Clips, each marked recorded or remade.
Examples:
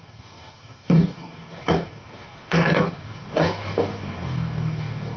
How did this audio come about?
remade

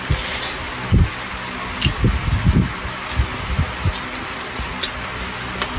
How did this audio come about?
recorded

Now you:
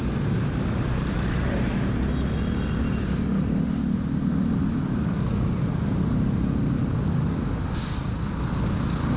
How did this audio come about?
recorded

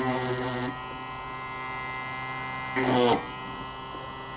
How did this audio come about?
recorded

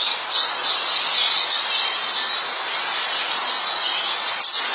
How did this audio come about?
recorded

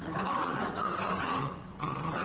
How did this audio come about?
remade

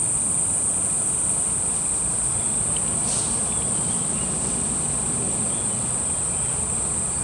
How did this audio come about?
recorded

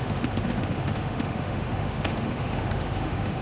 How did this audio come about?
remade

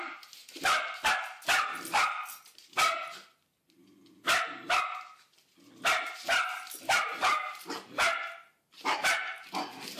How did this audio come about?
recorded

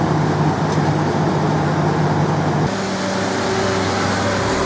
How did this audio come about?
recorded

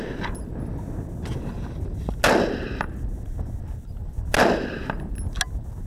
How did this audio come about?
recorded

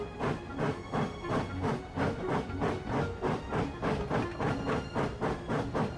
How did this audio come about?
recorded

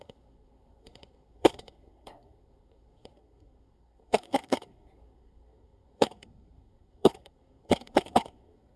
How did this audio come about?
remade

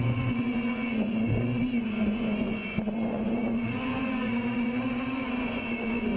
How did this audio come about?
remade